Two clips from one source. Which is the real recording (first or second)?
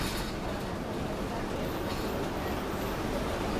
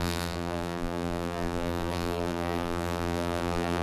first